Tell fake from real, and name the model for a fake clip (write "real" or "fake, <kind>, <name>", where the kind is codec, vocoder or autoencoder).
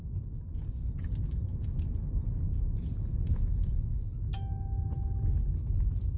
real